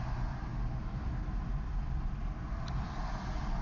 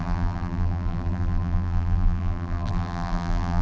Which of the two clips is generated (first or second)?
second